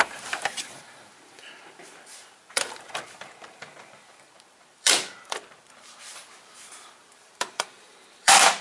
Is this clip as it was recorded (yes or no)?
no